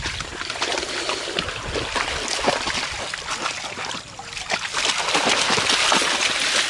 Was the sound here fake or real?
real